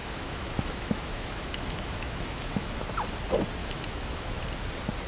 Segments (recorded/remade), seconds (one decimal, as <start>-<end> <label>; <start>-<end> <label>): 0.0-2.7 remade; 2.7-3.6 recorded; 3.6-4.4 remade; 4.4-5.1 recorded